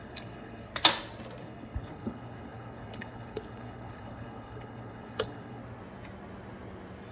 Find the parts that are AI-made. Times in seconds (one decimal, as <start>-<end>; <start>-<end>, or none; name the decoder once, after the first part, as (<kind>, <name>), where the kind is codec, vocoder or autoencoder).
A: 0.0-0.7 (codec, HILCodec); 1.4-5.6